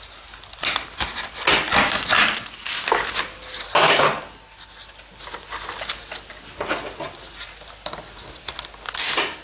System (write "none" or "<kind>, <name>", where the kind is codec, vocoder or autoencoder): none